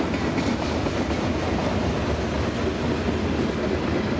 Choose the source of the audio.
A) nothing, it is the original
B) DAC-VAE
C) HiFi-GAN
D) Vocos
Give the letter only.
A